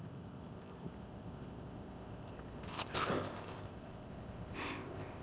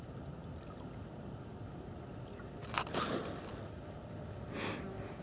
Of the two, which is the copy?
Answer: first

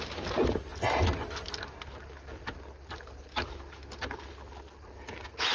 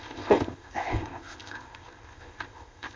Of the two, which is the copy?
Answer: second